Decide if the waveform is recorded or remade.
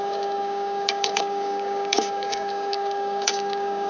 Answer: remade